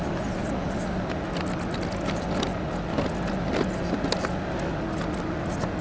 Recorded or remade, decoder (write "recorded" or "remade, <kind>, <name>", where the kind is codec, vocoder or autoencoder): recorded